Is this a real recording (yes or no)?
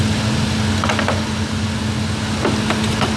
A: yes